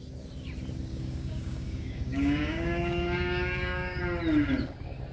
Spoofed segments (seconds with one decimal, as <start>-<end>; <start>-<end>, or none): 0.9-4.0